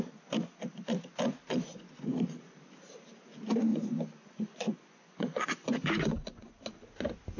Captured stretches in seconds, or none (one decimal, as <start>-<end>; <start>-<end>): 0.0-1.7; 2.4-3.7; 6.5-7.4